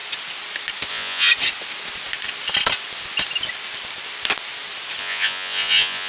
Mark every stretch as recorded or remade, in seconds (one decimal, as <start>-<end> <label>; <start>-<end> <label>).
0.0-0.9 recorded; 0.9-1.3 remade; 1.3-5.0 recorded; 5.0-6.1 remade